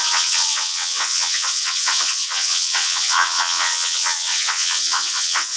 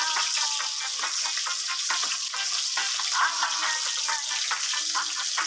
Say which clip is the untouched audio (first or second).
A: second